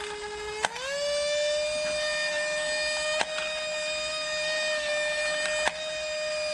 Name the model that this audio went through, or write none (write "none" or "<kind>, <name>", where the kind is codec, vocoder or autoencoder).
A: none